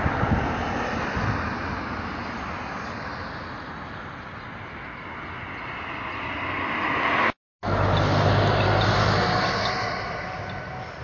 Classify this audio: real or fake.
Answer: real